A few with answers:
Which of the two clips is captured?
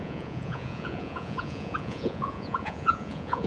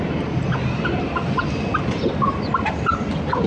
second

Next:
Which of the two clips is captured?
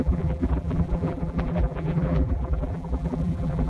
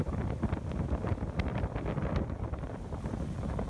second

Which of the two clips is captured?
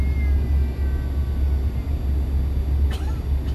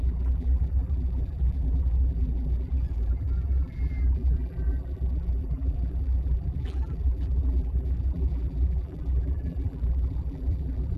first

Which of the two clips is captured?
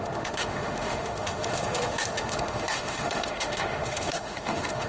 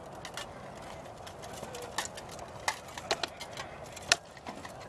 second